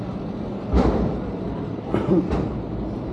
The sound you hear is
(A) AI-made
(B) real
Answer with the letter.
B